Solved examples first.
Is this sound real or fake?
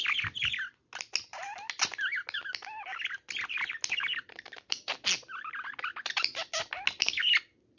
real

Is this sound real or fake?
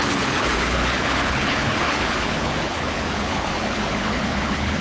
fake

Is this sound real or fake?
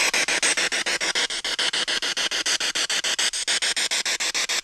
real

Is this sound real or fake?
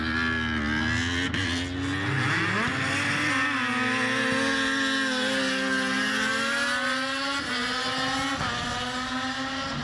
real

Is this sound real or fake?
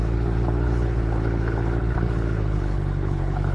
fake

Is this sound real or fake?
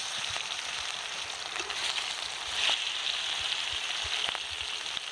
real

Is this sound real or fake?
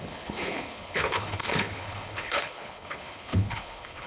fake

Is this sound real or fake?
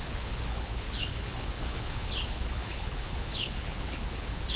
fake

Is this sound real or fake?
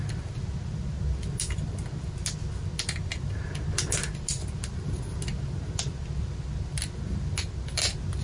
real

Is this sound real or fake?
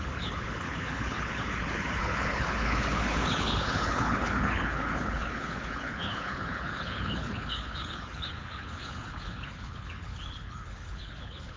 fake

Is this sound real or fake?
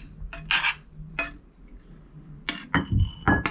real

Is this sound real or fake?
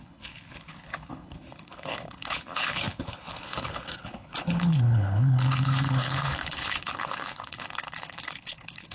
fake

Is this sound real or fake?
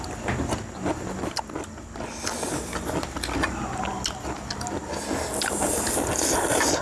real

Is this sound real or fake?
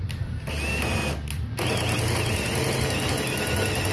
real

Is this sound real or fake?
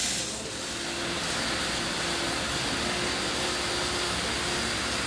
real